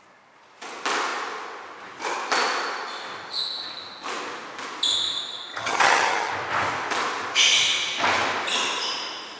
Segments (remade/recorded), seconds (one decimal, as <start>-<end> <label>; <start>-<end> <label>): 0.0-5.5 recorded; 5.5-6.3 remade; 6.3-9.4 recorded